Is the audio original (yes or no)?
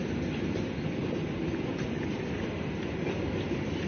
yes